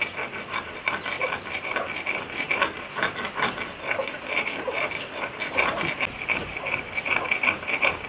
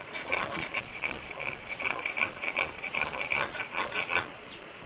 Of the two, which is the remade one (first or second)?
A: second